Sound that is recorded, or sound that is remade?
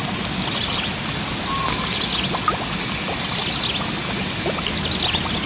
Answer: recorded